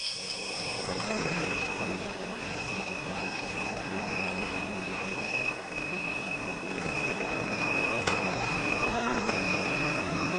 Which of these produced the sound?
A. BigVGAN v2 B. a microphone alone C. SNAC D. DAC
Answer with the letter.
C